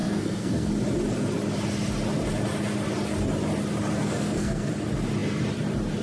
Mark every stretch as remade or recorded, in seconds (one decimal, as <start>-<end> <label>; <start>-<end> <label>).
0.0-0.7 remade; 0.7-4.0 recorded; 4.0-4.7 remade; 4.7-6.0 recorded